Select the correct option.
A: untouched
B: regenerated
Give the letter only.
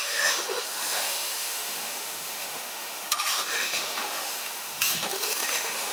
B